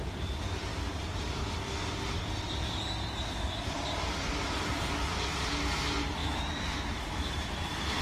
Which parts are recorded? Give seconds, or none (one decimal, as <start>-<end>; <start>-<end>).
0.0-6.2